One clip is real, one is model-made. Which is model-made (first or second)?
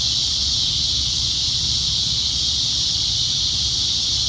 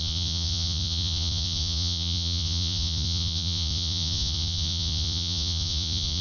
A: second